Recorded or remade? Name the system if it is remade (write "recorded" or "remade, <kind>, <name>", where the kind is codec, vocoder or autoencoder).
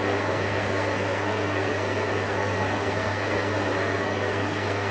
remade, codec, SNAC